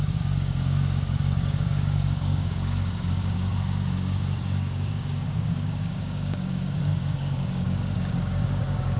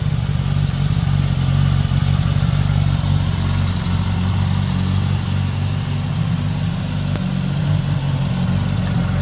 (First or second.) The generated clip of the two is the first